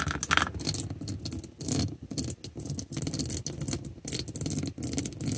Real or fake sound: real